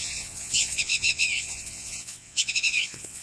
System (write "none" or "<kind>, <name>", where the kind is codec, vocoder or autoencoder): vocoder, WaveNeXt